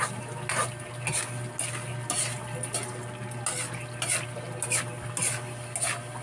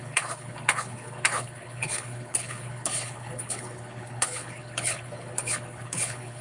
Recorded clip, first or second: first